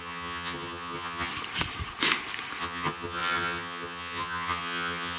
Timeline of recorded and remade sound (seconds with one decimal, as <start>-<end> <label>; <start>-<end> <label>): 0.0-1.3 remade; 1.3-2.6 recorded; 2.6-5.2 remade